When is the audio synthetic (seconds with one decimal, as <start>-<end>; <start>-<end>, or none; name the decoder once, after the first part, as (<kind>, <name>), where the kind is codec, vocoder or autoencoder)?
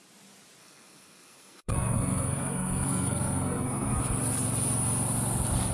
0.6-4.0 (codec, SNAC)